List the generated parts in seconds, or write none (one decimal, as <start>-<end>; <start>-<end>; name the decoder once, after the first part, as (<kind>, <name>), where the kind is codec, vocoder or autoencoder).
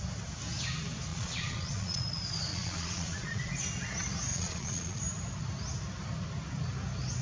1.1-2.0 (vocoder, Vocos); 2.5-3.5; 4.3-5.0